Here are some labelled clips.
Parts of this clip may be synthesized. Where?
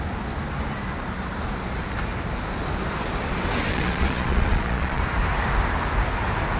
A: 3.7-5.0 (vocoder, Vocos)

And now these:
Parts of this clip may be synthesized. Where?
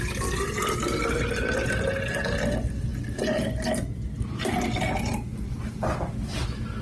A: none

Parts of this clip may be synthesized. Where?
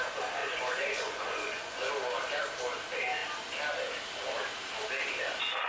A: 0.4-1.9 (vocoder, Vocos)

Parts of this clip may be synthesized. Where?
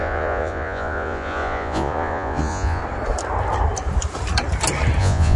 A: 0.0-2.8 (vocoder, Vocos); 5.0-5.4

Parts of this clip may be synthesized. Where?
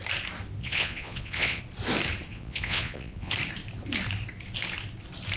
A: 0.6-1.6 (vocoder, Vocos); 2.3-3.3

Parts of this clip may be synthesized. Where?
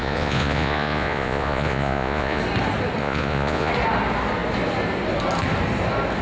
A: 0.0-2.4 (vocoder, Vocos); 3.0-3.7